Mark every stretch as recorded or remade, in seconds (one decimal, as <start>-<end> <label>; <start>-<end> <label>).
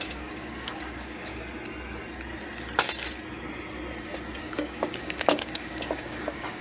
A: 0.0-1.3 remade; 1.3-4.4 recorded; 4.4-6.6 remade